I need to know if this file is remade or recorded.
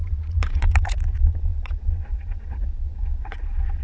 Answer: remade